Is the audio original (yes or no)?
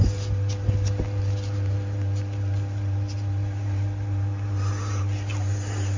yes